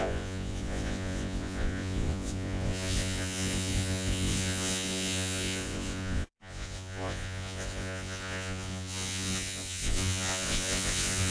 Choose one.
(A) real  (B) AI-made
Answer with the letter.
B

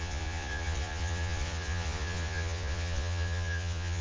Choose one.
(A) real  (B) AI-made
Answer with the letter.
B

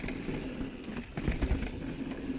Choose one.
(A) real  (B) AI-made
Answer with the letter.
A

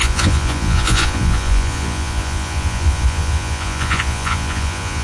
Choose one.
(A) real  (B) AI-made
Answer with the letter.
B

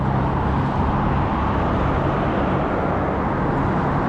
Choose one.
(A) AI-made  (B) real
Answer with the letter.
B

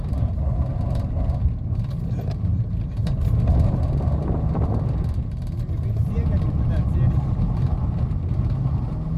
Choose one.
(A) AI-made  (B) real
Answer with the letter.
B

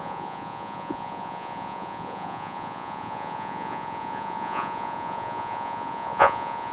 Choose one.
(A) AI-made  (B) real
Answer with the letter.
A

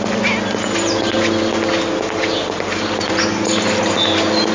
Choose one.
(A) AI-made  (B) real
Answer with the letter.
B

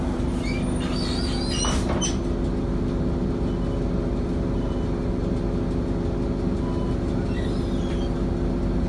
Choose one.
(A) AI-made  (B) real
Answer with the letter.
B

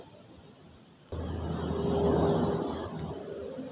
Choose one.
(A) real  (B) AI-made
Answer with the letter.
A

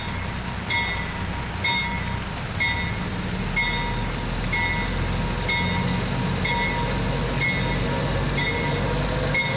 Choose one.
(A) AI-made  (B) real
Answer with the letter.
B